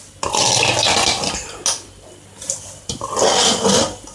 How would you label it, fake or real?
real